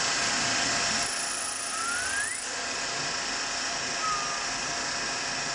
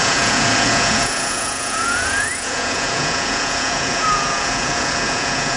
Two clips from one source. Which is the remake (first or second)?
second